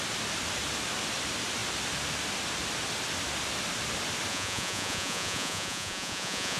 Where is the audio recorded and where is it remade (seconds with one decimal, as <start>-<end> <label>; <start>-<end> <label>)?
0.0-4.3 recorded; 4.3-6.6 remade